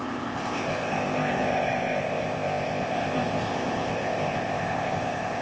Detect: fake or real fake